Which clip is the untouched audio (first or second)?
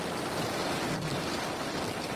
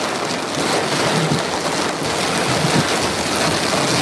second